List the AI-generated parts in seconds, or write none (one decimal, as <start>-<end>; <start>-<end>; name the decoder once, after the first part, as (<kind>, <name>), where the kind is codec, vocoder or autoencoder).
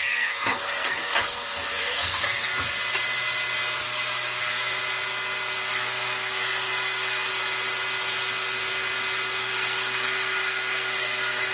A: 0.0-2.5 (codec, SNAC); 3.8-4.8; 5.7-7.3; 9.4-11.5